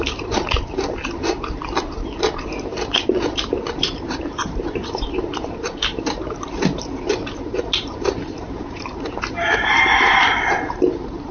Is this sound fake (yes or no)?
yes